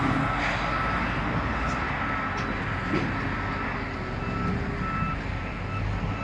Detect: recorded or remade recorded